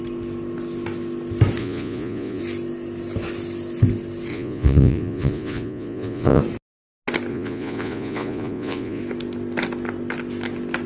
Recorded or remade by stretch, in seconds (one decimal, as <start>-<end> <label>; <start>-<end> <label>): 0.0-1.6 recorded; 1.6-2.4 remade; 2.4-4.3 recorded; 4.3-6.4 remade; 6.4-7.3 recorded; 7.3-9.0 remade; 9.0-10.9 recorded